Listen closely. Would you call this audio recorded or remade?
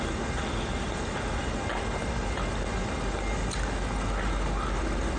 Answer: recorded